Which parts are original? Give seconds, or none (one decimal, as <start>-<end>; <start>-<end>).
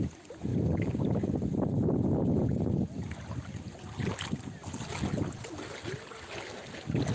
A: 0.0-7.1